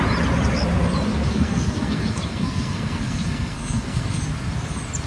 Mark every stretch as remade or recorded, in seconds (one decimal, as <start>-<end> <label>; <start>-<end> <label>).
0.0-1.1 recorded; 1.1-4.2 remade; 4.2-5.1 recorded